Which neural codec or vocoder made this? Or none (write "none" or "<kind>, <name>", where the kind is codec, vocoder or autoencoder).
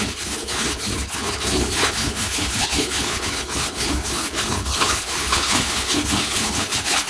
codec, HILCodec